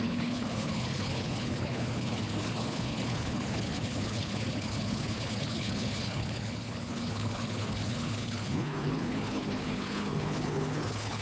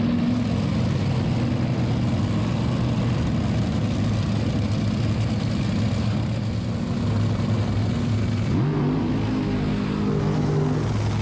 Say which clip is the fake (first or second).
first